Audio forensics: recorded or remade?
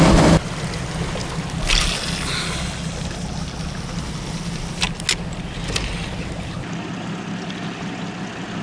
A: recorded